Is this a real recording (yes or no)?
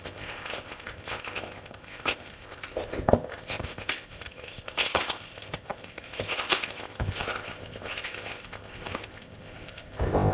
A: no